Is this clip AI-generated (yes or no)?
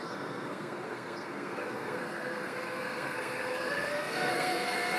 yes